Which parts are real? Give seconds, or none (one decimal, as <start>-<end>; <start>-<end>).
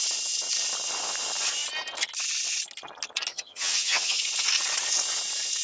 0.0-3.3; 4.2-5.6